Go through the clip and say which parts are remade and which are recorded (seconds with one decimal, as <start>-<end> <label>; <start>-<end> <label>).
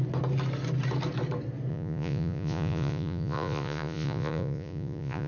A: 0.0-1.7 recorded; 1.7-5.3 remade